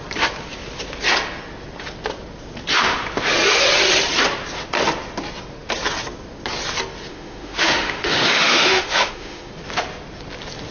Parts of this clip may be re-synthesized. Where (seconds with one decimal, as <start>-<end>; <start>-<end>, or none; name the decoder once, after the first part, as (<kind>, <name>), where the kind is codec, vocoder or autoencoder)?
7.1-9.5 (autoencoder, DAC-VAE)

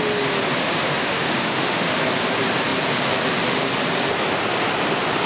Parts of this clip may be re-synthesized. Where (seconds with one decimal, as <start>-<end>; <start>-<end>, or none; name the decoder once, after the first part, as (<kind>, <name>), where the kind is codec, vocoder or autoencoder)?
0.6-1.9 (autoencoder, DAC-VAE)

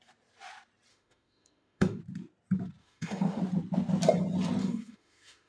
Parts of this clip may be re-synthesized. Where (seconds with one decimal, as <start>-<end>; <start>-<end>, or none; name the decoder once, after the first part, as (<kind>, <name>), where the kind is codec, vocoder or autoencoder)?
0.9-2.0 (autoencoder, DAC-VAE); 2.8-3.4; 4.6-5.5